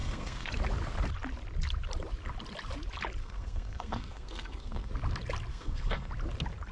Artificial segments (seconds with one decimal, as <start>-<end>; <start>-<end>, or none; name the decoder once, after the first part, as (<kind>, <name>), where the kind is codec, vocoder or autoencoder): 0.0-0.5 (codec, SNAC); 3.2-4.9; 5.5-6.1